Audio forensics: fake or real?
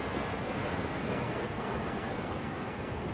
fake